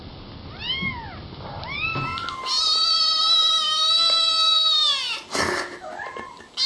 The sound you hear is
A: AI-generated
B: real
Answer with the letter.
B